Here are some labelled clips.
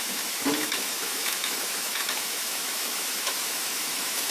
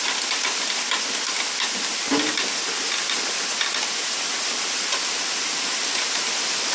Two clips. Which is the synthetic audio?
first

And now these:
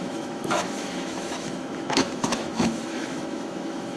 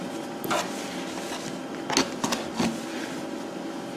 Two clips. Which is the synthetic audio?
first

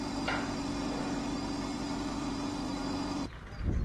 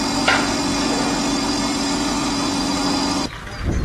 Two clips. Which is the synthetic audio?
first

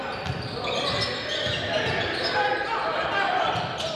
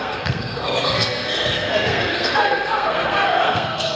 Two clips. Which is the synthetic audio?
second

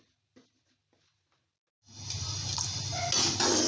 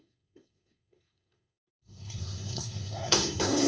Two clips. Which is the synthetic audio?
second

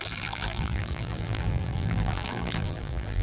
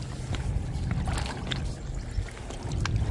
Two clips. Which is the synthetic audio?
first